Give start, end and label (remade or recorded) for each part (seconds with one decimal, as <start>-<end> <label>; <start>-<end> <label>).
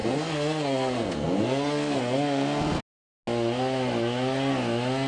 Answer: 0.0-2.8 remade; 2.8-5.1 recorded